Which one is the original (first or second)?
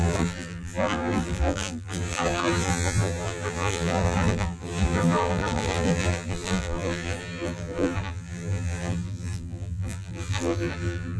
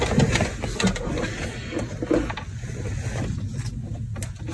second